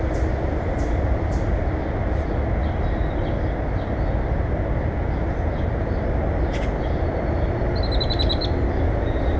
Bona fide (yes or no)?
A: yes